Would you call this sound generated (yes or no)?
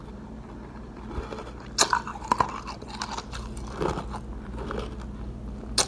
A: no